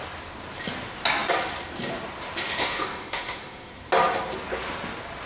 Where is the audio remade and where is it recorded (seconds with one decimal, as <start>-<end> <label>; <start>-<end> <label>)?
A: 0.0-2.6 recorded; 2.6-3.7 remade; 3.7-5.3 recorded